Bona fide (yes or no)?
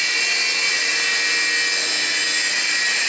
yes